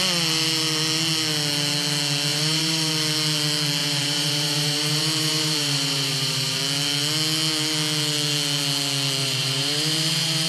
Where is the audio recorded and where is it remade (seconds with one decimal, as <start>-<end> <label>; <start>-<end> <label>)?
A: 0.0-2.3 recorded; 2.3-2.9 remade; 2.9-3.8 recorded; 3.8-6.6 remade; 6.6-9.2 recorded; 9.2-10.5 remade